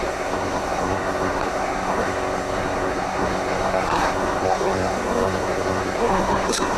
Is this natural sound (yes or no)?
no